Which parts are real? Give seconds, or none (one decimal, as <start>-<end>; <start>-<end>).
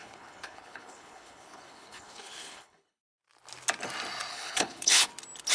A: 3.0-4.3; 5.1-5.5